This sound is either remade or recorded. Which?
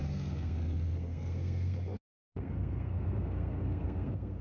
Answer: remade